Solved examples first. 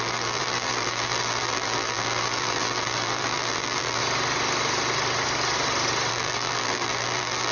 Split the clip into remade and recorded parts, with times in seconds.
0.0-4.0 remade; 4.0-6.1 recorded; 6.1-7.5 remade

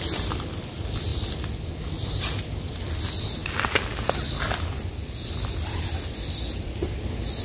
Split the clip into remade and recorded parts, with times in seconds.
0.0-7.4 recorded

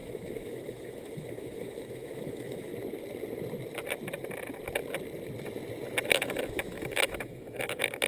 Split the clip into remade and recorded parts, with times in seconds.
0.0-2.7 remade; 2.7-6.1 recorded; 6.1-8.1 remade

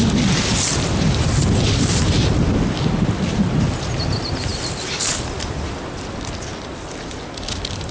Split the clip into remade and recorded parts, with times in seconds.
0.0-7.9 recorded

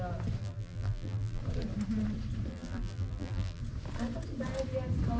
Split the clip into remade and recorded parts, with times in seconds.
0.0-0.4 recorded; 0.4-1.4 remade; 1.4-2.5 recorded; 2.5-3.6 remade; 3.6-5.2 recorded

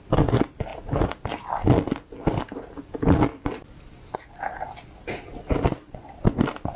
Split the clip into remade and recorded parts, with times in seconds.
0.0-6.8 recorded